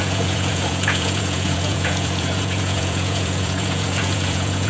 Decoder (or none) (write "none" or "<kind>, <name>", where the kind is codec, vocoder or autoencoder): vocoder, Vocos